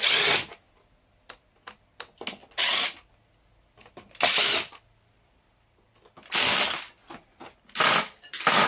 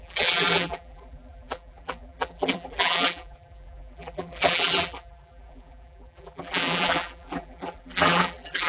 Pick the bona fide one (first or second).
first